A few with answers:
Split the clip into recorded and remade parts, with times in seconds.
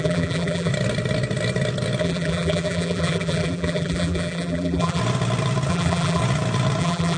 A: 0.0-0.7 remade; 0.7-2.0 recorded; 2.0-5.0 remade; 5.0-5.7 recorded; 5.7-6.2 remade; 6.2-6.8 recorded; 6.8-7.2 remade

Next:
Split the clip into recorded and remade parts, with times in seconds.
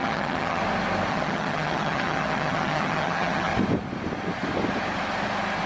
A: 0.0-0.6 remade; 0.6-1.1 recorded; 1.1-3.5 remade; 3.5-5.7 recorded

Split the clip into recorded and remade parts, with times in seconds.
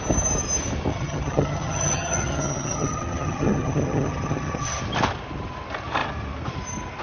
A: 0.0-0.9 recorded; 0.9-4.8 remade; 4.8-7.0 recorded